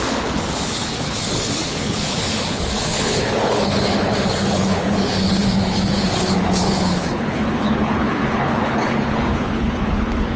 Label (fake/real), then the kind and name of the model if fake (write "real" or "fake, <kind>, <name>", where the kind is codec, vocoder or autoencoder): fake, codec, HILCodec